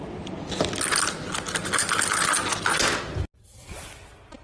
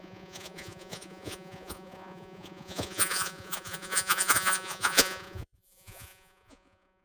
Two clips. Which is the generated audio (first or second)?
second